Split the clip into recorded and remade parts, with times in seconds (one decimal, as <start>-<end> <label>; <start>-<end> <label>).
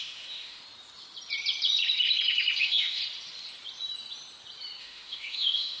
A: 0.0-0.6 remade; 0.6-2.6 recorded; 2.6-3.0 remade; 3.0-4.8 recorded; 4.8-5.8 remade